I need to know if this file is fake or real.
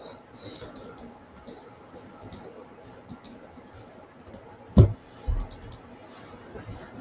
real